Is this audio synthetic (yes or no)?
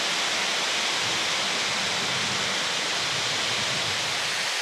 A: no